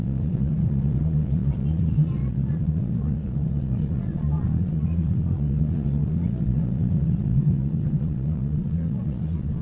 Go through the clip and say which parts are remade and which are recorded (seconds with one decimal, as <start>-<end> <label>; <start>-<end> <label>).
0.0-9.6 remade